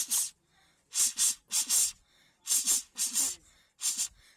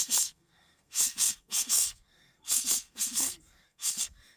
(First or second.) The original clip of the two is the first